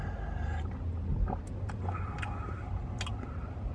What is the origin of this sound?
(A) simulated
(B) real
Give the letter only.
B